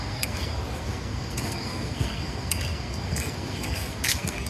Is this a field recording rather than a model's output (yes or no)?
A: no